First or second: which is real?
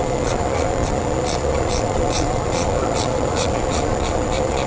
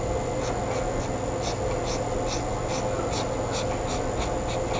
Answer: second